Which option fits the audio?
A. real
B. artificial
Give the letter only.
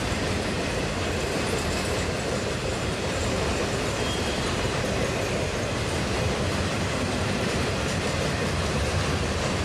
B